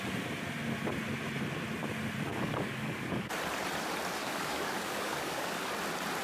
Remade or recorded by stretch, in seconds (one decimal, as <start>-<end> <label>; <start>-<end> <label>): 0.0-2.3 recorded; 2.3-3.3 remade; 3.3-4.2 recorded; 4.2-5.7 remade; 5.7-6.2 recorded